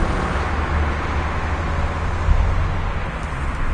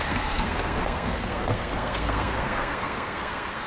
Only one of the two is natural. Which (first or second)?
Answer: first